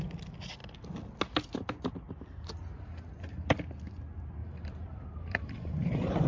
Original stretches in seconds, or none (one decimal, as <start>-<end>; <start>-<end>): 0.0-4.4